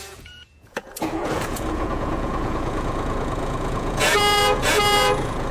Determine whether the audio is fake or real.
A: fake